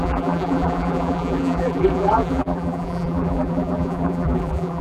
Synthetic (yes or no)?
yes